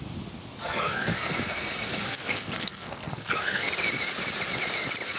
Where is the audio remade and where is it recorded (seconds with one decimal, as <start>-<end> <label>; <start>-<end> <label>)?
0.0-0.6 recorded; 0.6-3.7 remade; 3.7-5.2 recorded